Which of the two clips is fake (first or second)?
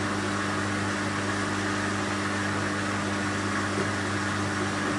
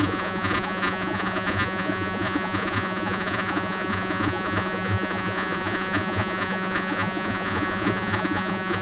second